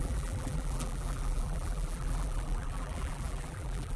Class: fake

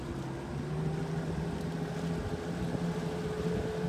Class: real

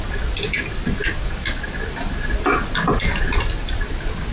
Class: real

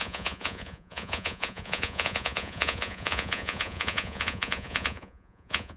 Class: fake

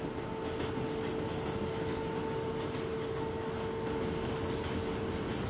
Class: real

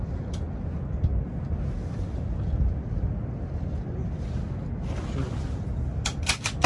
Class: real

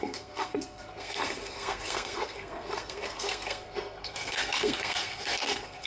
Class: fake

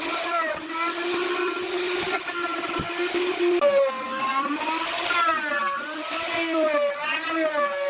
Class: real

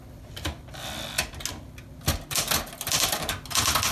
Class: real